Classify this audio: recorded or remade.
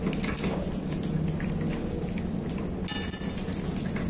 recorded